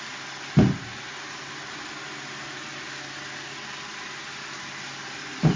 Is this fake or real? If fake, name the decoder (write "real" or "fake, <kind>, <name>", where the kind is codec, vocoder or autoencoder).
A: real